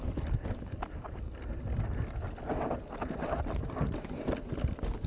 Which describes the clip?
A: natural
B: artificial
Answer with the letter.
A